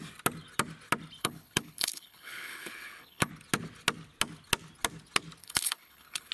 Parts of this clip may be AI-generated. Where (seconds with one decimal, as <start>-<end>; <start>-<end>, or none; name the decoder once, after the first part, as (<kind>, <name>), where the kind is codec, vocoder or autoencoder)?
1.2-3.3 (codec, HILCodec); 5.4-6.3